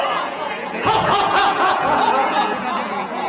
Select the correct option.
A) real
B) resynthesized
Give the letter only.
B